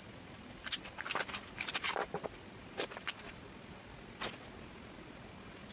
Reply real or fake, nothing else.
real